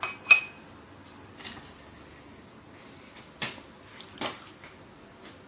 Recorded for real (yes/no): yes